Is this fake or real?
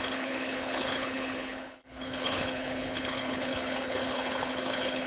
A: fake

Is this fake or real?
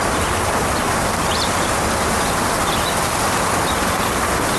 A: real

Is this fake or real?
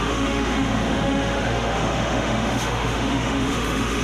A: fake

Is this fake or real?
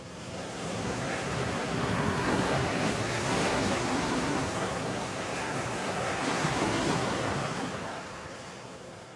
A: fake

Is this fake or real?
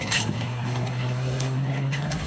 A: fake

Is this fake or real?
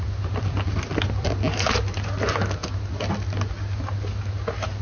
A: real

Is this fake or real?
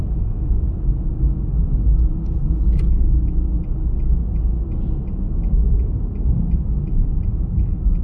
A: real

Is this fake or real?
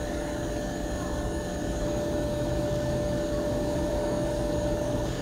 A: fake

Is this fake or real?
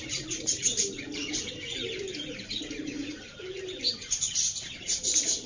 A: fake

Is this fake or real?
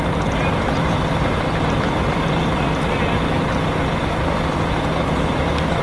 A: real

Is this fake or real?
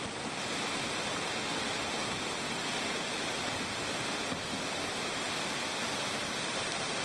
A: real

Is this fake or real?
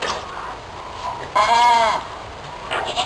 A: real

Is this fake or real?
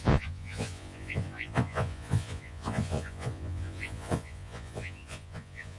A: fake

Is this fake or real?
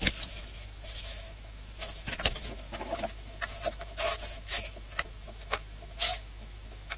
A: fake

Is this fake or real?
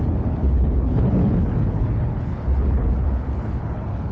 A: fake